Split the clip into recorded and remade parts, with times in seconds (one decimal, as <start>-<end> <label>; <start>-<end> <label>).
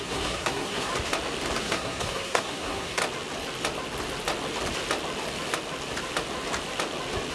0.0-0.9 remade; 0.9-1.6 recorded; 1.6-3.0 remade; 3.0-7.3 recorded